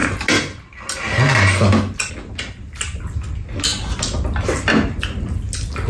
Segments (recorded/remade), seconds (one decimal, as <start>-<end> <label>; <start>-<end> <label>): 0.0-5.9 recorded